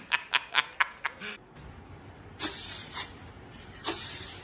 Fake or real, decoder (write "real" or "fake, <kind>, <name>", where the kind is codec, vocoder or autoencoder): real